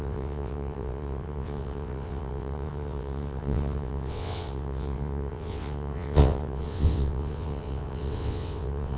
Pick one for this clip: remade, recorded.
remade